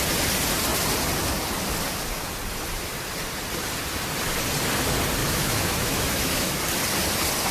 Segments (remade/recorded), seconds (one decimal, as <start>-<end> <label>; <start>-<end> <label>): 0.0-5.2 recorded; 5.2-6.6 remade; 6.6-7.5 recorded